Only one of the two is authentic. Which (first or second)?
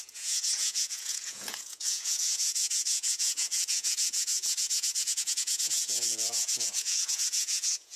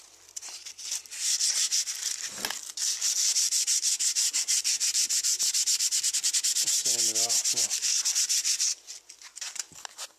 second